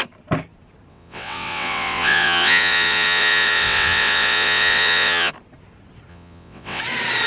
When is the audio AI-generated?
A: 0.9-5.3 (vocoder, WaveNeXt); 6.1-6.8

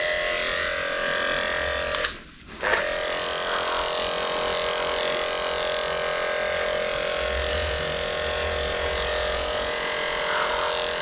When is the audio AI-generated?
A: 7.5-10.5 (vocoder, Vocos)

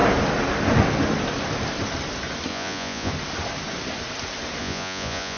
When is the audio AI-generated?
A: 2.5-3.1 (vocoder, Vocos); 4.6-5.4

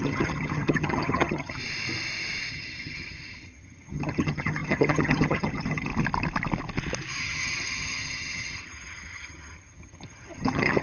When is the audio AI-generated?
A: 0.0-1.6 (vocoder, HiFi-GAN); 2.5-5.9; 7.2-10.8

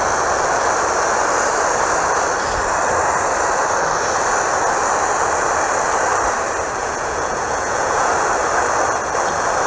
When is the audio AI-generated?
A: 6.8-8.1 (vocoder, Vocos)

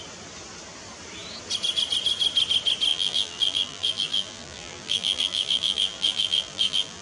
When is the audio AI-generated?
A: 2.9-7.0 (vocoder, BigVGAN v2)

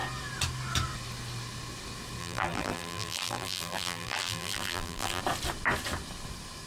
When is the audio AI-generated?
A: 2.2-5.2 (vocoder, BigVGAN v2)